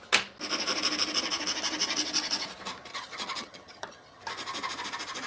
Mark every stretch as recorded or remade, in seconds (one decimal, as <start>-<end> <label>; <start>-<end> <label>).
0.0-2.9 recorded; 2.9-4.2 remade; 4.2-5.3 recorded